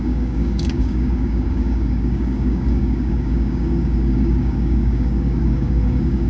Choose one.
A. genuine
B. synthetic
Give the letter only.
B